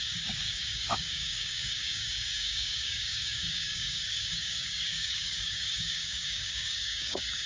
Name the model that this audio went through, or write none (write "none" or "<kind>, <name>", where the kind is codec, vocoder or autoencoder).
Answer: codec, DAC